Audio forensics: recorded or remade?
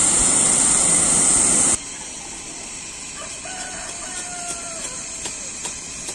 recorded